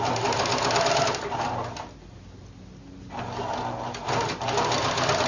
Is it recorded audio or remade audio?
recorded